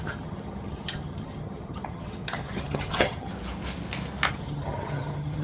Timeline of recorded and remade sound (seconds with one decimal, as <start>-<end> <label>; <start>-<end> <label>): 0.0-3.3 remade; 3.3-4.3 recorded; 4.3-5.4 remade